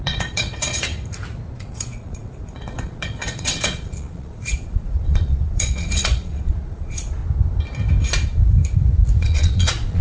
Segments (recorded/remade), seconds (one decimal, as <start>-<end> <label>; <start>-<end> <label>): 0.0-0.9 remade; 0.9-1.5 recorded; 1.5-7.2 remade; 7.2-9.2 recorded; 9.2-10.0 remade